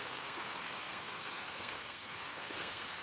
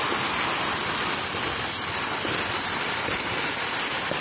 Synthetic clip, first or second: first